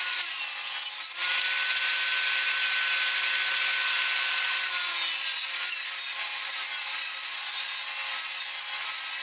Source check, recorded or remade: recorded